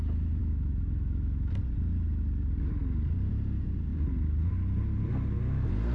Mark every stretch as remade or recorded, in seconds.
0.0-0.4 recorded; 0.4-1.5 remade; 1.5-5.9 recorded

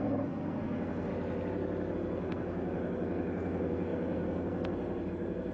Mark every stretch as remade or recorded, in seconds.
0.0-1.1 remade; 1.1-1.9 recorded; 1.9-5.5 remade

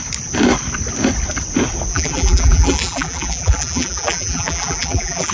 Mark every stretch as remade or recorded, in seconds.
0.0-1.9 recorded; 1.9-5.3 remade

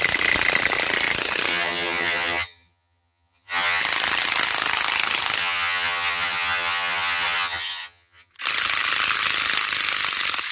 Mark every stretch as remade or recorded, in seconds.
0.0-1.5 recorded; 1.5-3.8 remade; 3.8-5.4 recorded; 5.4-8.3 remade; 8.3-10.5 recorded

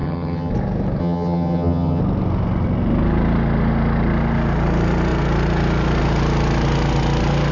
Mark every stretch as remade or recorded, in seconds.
0.0-0.5 remade; 0.5-1.0 recorded; 1.0-2.0 remade; 2.0-7.5 recorded